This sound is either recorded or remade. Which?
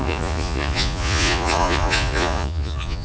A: remade